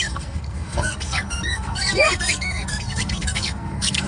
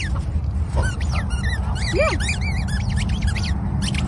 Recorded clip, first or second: second